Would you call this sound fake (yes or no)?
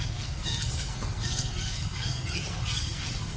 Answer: yes